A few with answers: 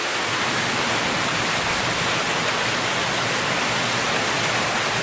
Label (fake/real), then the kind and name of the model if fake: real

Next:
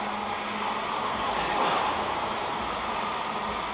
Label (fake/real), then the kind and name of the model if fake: real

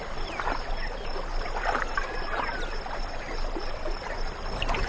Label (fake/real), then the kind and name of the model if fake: real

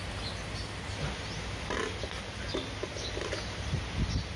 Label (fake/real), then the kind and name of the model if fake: real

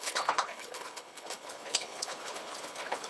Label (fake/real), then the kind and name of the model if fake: fake, codec, HILCodec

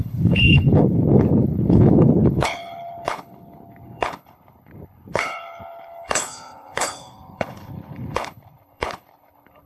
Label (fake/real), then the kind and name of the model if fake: fake, codec, HILCodec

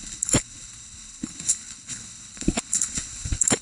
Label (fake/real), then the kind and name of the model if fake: fake, codec, HILCodec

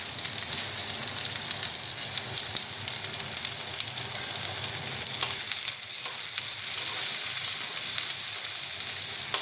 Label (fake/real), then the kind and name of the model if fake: real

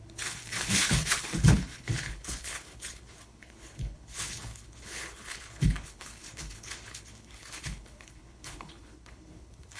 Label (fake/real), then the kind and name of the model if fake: fake, codec, HILCodec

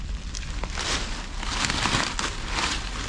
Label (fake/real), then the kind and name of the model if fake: real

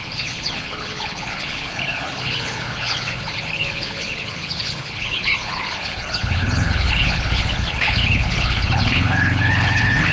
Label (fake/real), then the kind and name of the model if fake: fake, codec, HILCodec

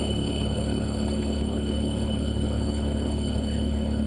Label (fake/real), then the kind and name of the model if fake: fake, codec, HILCodec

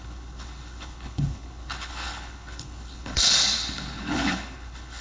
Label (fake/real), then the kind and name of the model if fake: fake, codec, HILCodec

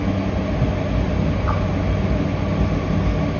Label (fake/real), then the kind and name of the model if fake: real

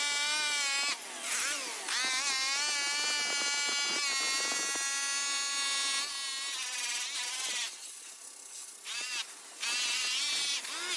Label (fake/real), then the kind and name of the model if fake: real